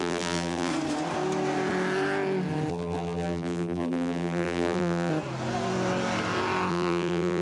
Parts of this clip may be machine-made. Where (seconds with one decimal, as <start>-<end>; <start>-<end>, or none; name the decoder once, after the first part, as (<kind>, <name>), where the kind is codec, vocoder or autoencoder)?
0.0-0.7 (vocoder, BigVGAN v2); 2.7-5.1; 6.7-7.4